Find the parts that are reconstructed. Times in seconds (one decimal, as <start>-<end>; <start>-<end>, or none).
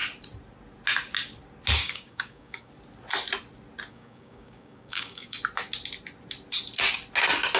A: 1.8-2.7; 3.9-5.4